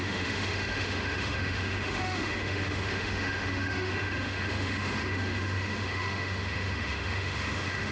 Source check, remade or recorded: remade